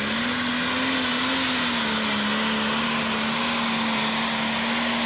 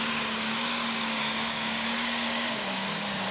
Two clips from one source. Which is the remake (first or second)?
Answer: second